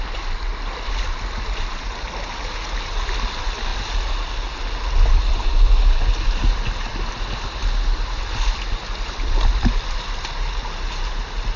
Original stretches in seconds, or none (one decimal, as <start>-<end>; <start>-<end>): 0.0-11.6